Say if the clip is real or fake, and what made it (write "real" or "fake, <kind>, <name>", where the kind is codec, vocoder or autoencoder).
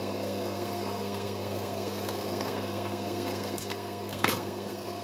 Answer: fake, codec, SNAC